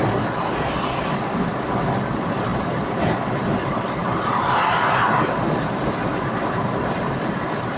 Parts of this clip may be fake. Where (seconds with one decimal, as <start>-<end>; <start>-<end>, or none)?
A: none